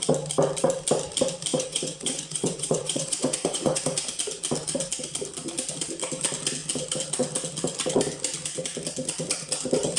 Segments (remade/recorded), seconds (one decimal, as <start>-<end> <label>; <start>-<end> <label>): 0.0-1.5 recorded; 1.5-3.8 remade; 3.8-10.0 recorded